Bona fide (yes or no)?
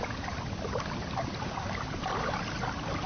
yes